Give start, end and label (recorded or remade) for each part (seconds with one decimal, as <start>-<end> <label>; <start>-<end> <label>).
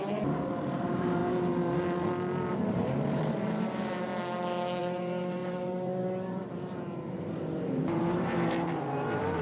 0.0-1.2 remade; 1.2-2.5 recorded; 2.5-4.1 remade; 4.1-4.8 recorded; 4.8-9.4 remade